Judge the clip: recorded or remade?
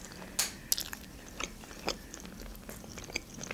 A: recorded